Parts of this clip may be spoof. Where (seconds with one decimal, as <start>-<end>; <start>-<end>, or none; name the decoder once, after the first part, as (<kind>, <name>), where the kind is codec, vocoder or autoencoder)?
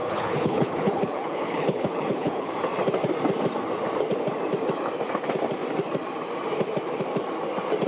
0.0-2.5 (codec, HILCodec)